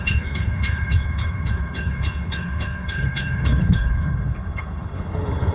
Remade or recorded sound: remade